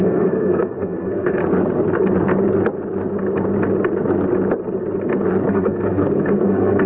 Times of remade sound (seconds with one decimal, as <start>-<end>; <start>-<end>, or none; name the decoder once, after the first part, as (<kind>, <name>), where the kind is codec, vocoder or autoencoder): 0.0-1.4 (codec, SNAC); 5.5-6.9